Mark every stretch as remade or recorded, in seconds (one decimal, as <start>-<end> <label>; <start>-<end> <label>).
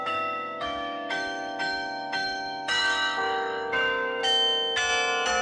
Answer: 0.0-4.2 remade; 4.2-5.4 recorded